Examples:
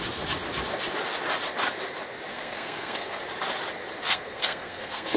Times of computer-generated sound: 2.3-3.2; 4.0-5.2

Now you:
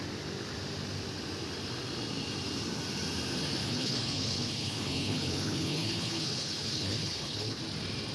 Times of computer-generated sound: 3.6-7.6

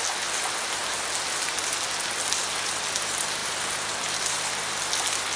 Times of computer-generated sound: 3.4-4.4

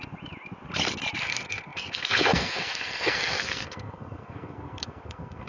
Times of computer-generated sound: 1.2-5.5